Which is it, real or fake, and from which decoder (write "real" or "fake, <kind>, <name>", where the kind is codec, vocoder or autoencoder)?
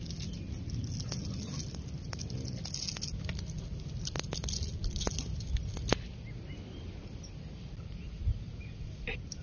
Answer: real